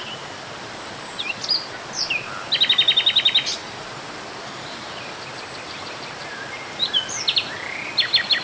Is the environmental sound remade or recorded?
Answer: recorded